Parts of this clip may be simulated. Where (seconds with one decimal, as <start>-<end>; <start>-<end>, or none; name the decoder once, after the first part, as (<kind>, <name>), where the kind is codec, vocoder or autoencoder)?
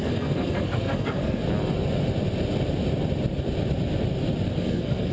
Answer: 0.0-1.4 (codec, SNAC); 4.5-5.1